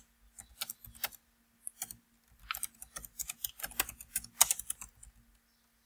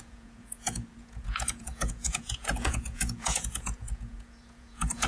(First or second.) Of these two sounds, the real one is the first